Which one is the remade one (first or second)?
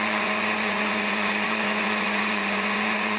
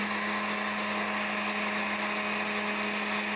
first